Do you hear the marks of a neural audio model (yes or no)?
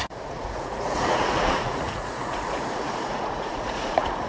yes